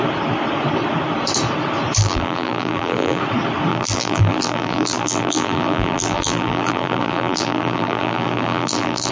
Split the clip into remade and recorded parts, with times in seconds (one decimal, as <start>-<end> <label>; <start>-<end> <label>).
0.0-2.0 recorded; 2.0-3.2 remade; 3.2-3.7 recorded; 3.7-9.1 remade